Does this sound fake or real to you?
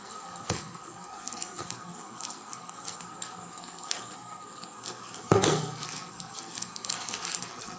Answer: fake